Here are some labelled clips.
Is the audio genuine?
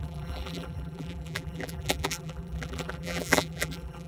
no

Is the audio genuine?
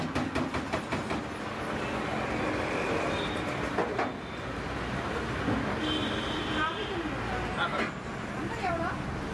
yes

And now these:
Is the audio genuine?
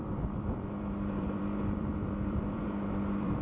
no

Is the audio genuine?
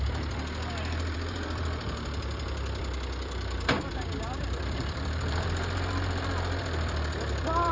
no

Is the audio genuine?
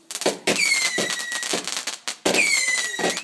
yes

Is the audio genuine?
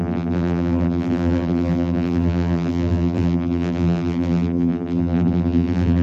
no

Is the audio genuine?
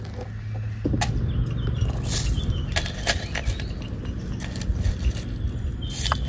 yes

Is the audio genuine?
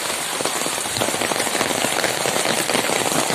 no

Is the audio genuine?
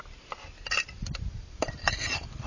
yes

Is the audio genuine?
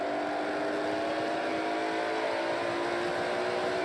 yes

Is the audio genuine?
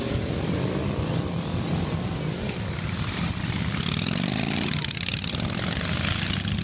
no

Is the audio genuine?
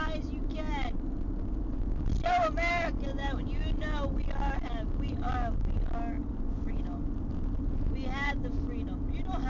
yes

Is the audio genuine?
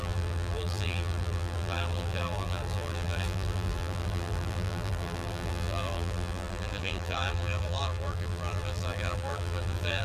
no